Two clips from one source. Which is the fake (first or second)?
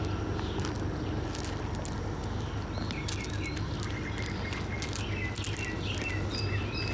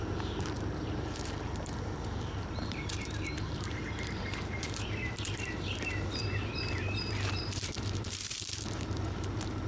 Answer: second